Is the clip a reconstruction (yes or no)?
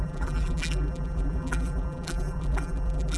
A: yes